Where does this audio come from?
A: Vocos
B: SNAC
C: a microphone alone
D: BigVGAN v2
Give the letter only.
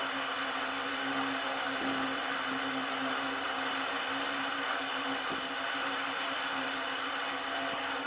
C